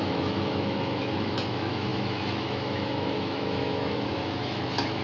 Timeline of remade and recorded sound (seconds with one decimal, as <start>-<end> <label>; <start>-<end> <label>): 0.0-5.0 remade